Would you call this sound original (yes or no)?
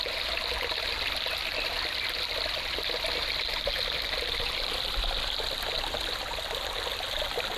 yes